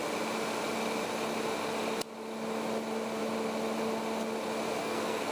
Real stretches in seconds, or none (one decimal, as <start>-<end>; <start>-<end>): 0.0-4.8